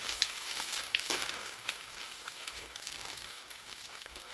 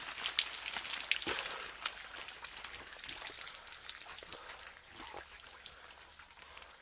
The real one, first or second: second